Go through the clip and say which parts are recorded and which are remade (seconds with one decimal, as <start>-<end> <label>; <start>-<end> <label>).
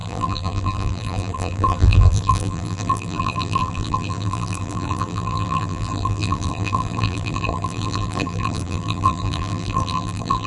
0.0-10.5 remade